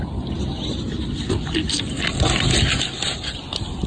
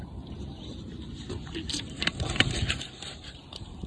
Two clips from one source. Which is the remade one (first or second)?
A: second